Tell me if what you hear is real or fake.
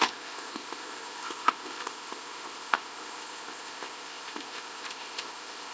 fake